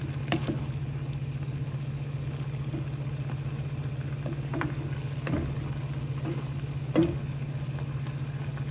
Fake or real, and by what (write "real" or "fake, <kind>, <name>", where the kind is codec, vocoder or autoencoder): real